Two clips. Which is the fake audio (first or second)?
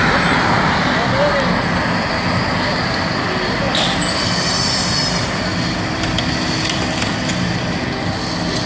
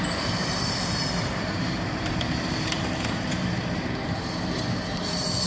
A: second